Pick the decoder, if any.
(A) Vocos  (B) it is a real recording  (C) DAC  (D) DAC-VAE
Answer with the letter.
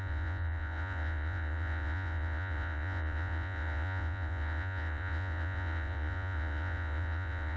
A